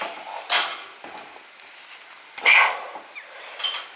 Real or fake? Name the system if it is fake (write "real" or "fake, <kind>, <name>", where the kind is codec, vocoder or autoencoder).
real